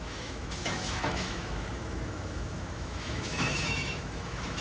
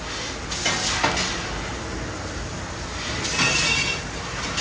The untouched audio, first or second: second